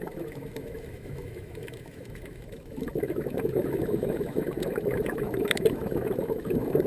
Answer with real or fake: fake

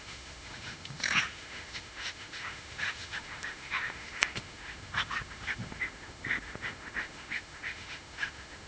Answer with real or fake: fake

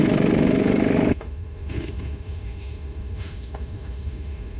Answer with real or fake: fake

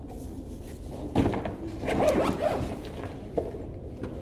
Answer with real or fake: real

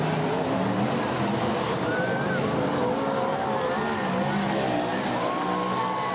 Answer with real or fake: real